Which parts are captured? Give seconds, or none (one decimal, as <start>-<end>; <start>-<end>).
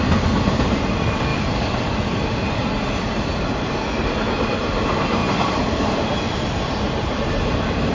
0.0-5.2; 5.9-7.9